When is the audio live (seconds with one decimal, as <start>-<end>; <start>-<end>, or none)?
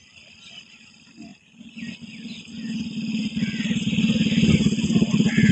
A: 0.0-5.5